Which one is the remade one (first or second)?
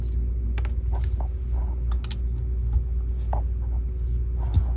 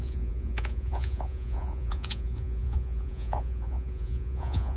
second